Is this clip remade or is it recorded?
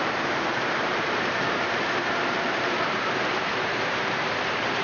remade